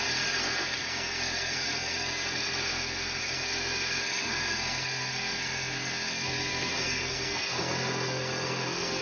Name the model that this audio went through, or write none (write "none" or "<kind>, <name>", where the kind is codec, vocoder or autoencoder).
codec, SNAC